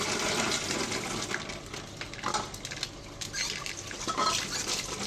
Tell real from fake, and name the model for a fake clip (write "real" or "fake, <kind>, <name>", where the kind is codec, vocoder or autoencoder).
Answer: real